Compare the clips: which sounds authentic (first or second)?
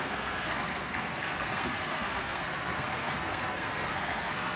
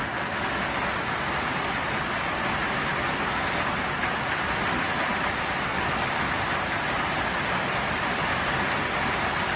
second